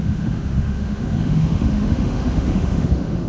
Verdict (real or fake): fake